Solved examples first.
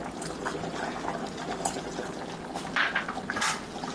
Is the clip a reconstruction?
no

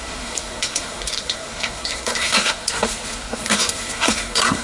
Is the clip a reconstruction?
yes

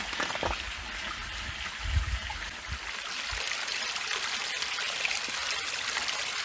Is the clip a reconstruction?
no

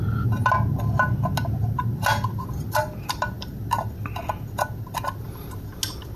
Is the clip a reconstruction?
no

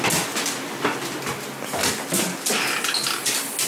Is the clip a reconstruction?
no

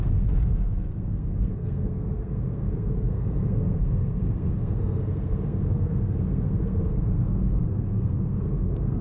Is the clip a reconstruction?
yes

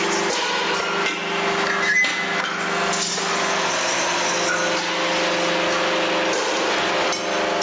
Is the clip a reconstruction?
no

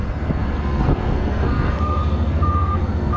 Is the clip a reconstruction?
yes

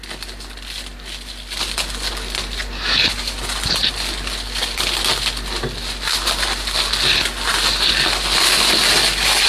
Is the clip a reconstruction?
no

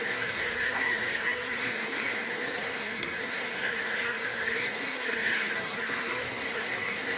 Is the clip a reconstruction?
yes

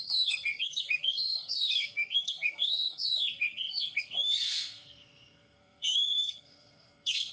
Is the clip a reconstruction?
yes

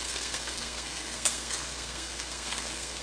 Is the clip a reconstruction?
yes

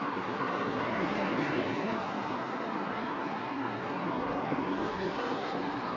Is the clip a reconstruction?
yes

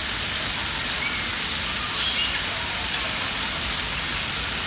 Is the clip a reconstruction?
no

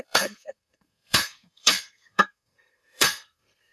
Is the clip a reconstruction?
yes